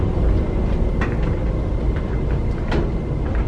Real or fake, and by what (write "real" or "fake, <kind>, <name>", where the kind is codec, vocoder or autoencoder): real